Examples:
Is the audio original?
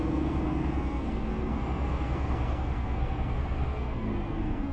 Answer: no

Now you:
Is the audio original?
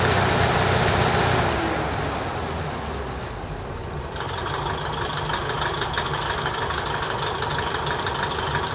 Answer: yes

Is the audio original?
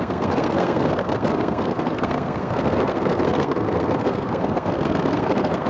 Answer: no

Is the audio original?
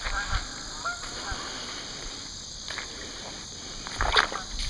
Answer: yes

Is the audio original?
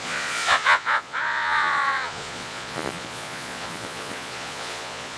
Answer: no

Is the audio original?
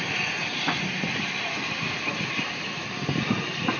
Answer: no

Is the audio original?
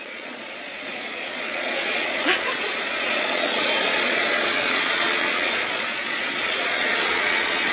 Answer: no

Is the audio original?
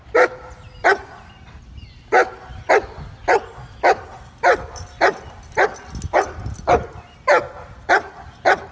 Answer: yes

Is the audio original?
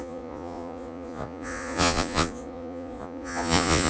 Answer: no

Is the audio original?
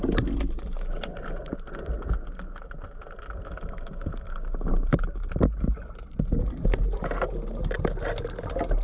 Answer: yes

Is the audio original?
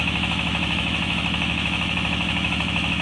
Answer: no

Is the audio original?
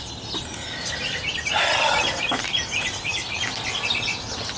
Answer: yes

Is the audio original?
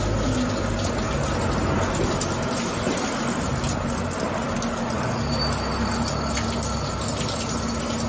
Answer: yes